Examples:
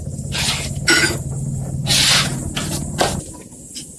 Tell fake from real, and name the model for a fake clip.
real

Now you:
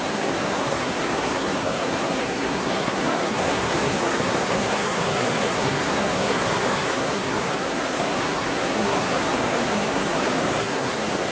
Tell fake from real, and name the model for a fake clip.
fake, codec, SNAC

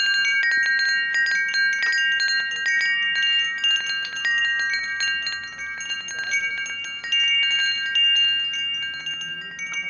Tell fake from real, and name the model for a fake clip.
real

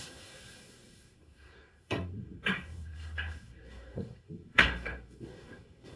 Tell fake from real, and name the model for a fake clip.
fake, codec, SNAC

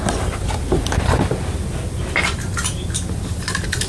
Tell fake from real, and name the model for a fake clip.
real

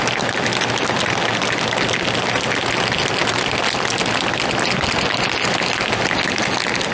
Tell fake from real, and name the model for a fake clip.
real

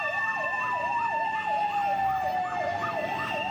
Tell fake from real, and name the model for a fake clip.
real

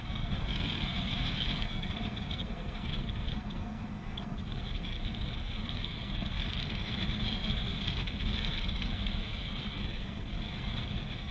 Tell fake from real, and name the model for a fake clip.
fake, codec, SNAC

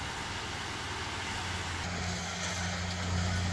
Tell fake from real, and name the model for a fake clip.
real